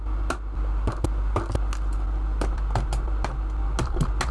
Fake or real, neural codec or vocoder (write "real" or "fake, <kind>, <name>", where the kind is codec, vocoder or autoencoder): real